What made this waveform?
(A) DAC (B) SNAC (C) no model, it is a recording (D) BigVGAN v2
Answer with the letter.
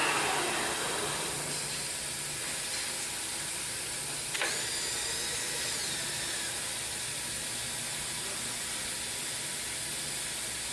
C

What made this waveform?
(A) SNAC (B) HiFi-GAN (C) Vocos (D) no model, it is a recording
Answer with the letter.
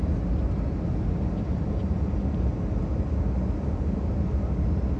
D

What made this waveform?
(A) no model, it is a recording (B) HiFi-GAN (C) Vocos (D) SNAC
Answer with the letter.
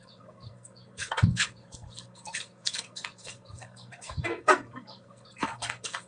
D